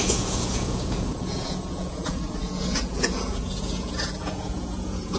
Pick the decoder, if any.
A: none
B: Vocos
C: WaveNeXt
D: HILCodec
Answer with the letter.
B